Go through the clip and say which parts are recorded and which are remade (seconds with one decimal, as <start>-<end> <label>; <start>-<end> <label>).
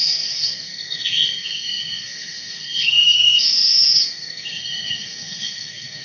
0.0-6.0 remade